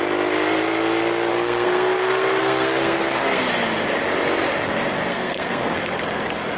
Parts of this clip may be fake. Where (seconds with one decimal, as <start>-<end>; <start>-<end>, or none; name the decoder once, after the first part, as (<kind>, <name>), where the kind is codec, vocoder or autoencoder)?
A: 1.3-3.4 (codec, SNAC); 5.1-5.6